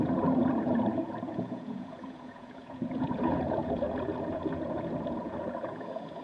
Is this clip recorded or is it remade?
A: remade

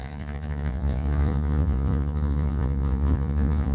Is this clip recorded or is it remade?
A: remade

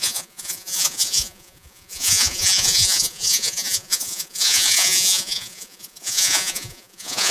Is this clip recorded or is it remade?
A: remade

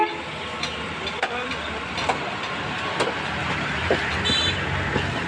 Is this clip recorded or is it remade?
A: recorded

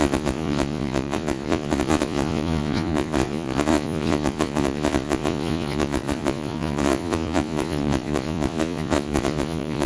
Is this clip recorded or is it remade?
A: remade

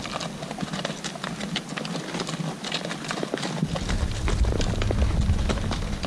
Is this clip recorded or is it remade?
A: recorded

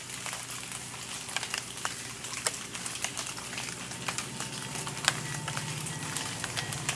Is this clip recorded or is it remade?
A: recorded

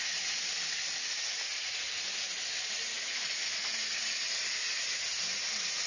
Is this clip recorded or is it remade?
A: recorded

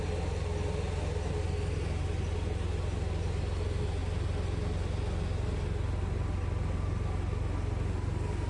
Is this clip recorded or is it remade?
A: recorded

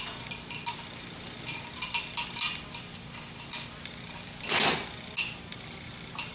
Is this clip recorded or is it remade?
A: recorded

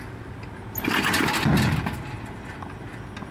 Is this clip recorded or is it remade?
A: recorded